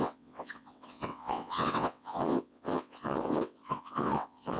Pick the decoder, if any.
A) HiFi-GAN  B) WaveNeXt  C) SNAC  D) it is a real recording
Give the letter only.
B